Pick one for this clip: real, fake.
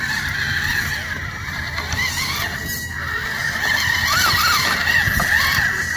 real